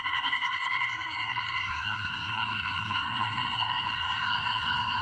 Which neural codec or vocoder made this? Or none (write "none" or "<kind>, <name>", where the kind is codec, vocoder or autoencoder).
codec, SNAC